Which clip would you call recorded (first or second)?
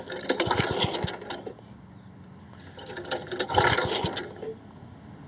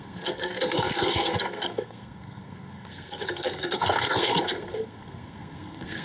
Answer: first